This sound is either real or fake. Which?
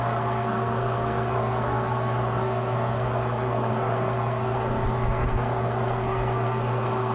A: fake